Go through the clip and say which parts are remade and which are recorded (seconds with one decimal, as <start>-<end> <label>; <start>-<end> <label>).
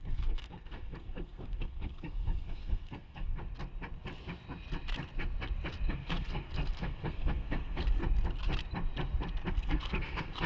0.0-3.4 remade; 3.4-5.9 recorded; 5.9-8.0 remade; 8.0-9.5 recorded; 9.5-10.5 remade